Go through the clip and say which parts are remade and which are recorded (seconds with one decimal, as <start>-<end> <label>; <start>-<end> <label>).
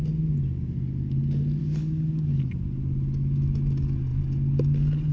0.0-1.6 recorded; 1.6-2.5 remade; 2.5-5.1 recorded